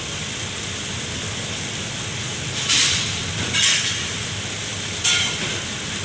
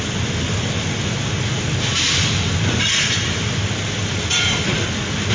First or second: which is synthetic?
first